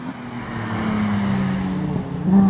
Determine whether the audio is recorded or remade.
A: recorded